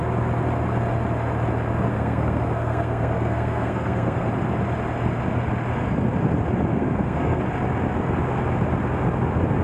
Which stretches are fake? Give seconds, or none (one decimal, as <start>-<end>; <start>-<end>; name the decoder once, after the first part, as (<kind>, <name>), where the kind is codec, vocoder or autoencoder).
1.9-4.3 (codec, SNAC); 6.7-7.4